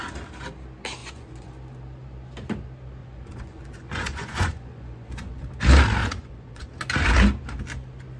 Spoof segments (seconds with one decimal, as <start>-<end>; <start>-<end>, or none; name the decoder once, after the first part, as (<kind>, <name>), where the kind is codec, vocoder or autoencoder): 1.0-1.5 (vocoder, Vocos); 3.0-5.4; 6.0-6.7